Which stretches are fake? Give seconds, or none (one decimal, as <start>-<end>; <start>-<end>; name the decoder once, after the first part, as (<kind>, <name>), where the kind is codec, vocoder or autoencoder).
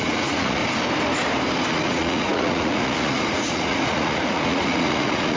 0.0-0.6 (vocoder, Vocos); 1.7-5.4